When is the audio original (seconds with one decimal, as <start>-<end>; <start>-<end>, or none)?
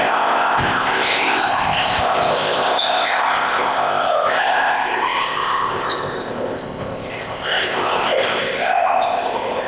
none